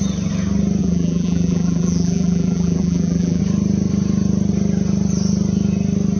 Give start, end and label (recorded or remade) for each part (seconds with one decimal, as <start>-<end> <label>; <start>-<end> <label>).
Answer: 0.0-0.8 recorded; 0.8-3.4 remade; 3.4-6.2 recorded